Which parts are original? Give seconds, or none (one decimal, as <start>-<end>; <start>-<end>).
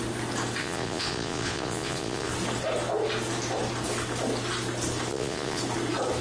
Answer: 0.0-0.6; 2.3-5.1; 5.6-6.2